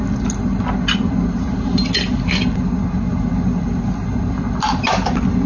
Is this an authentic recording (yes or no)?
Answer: yes